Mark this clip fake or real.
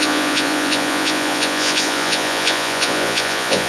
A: fake